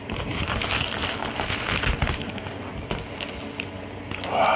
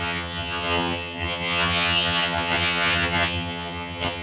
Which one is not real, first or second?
second